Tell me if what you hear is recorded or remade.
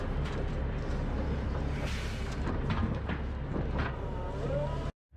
recorded